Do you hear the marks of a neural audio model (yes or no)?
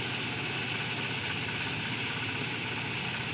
no